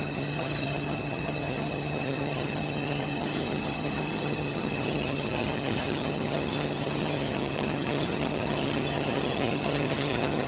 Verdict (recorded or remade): remade